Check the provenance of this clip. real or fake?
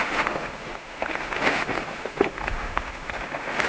fake